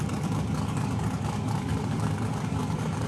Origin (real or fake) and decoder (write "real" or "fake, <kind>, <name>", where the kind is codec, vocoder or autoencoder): fake, codec, DAC